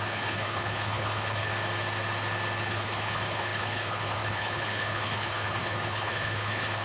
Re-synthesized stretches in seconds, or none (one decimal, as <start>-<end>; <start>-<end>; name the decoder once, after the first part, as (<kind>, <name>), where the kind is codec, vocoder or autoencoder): 0.0-1.5 (codec, HILCodec); 2.6-6.8